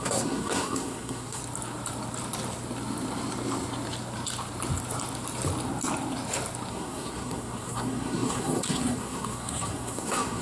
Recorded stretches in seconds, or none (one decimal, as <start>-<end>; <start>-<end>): 1.4-6.7